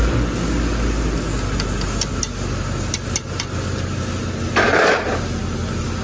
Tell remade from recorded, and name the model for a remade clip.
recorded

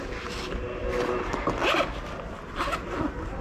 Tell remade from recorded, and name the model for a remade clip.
recorded